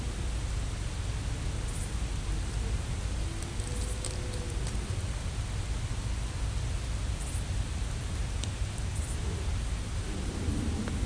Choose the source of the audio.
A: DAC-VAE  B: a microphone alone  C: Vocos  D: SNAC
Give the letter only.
B